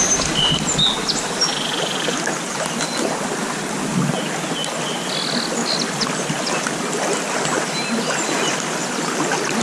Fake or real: real